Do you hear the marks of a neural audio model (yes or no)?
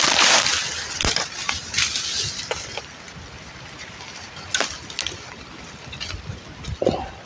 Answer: no